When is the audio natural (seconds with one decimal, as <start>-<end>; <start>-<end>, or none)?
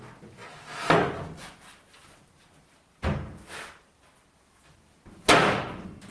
0.0-6.1